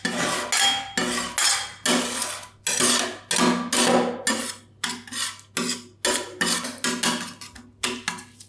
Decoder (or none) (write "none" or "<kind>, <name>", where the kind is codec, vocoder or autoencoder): none